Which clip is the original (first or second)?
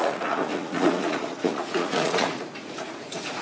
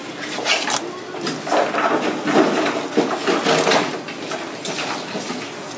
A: second